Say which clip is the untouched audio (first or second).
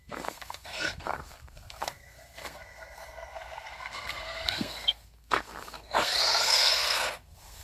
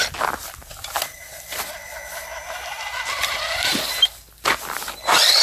second